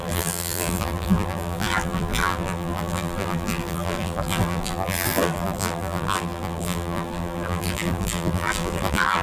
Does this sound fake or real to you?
fake